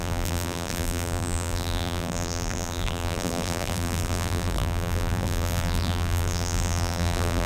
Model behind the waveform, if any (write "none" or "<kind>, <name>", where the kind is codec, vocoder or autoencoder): vocoder, BigVGAN v2